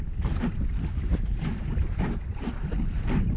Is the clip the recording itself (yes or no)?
yes